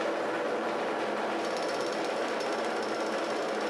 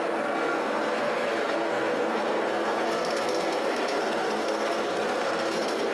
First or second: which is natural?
first